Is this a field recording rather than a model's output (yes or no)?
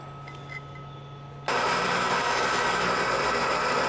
yes